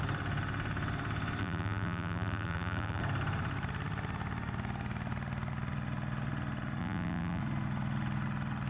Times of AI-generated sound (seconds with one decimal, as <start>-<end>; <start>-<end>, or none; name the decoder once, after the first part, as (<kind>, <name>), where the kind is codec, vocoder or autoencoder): 1.4-3.0 (vocoder, BigVGAN v2); 6.8-7.4